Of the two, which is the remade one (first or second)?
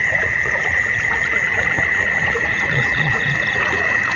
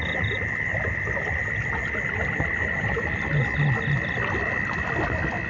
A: first